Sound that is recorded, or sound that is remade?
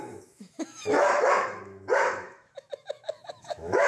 remade